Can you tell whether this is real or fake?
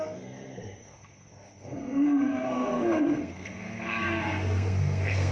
fake